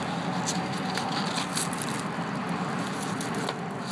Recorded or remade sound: recorded